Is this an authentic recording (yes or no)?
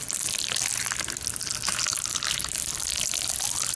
yes